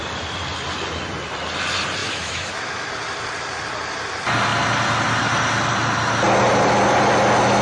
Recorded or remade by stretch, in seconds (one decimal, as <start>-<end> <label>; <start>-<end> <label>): 0.0-2.0 recorded; 2.0-2.9 remade; 2.9-7.6 recorded

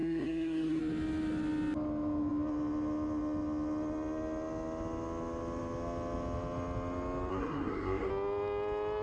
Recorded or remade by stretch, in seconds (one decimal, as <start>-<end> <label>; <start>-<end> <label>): 0.0-0.8 remade; 0.8-7.3 recorded; 7.3-8.1 remade; 8.1-9.0 recorded

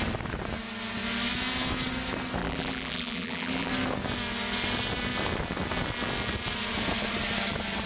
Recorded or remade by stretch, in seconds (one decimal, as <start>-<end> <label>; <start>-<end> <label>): 0.0-2.4 recorded; 2.4-3.7 remade; 3.7-7.9 recorded

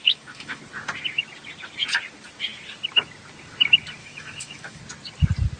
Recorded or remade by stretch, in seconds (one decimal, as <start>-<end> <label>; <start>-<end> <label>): 0.0-0.6 remade; 0.6-4.0 recorded; 4.0-4.8 remade; 4.8-5.6 recorded

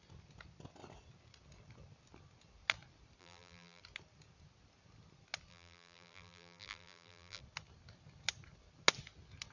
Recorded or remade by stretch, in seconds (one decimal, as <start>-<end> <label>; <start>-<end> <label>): 0.0-3.2 recorded; 3.2-3.8 remade; 3.8-5.5 recorded; 5.5-7.4 remade; 7.4-9.5 recorded

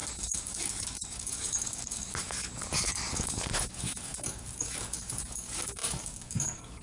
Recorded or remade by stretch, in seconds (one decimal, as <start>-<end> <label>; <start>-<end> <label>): 0.0-6.8 remade

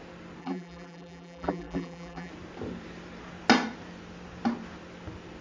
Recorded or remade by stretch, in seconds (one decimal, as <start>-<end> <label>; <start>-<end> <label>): 0.0-0.4 recorded; 0.4-2.3 remade; 2.3-5.4 recorded

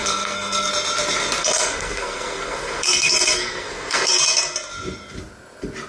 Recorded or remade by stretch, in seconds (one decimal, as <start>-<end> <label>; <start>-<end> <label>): 0.0-0.7 remade; 0.7-1.4 recorded; 1.4-4.1 remade; 4.1-5.9 recorded